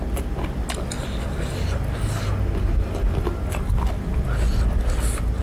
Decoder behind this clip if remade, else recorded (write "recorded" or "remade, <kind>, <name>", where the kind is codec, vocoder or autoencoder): recorded